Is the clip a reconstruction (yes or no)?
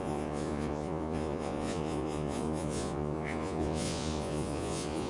yes